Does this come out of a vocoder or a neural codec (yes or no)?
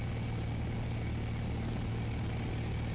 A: no